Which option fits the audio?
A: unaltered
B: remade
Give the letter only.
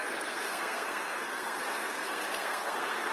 B